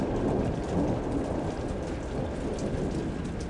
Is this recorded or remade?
recorded